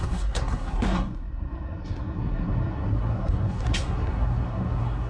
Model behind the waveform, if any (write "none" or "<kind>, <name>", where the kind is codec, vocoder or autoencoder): codec, SNAC